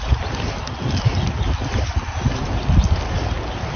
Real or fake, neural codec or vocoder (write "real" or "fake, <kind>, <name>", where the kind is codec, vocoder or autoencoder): real